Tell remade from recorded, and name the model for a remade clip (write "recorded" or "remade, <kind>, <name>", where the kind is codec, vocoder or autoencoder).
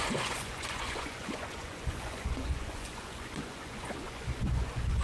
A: remade, vocoder, Vocos